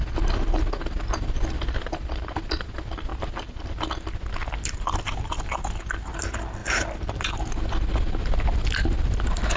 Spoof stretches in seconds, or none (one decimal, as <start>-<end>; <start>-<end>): 6.6-7.5